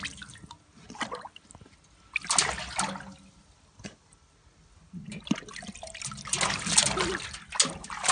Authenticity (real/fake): real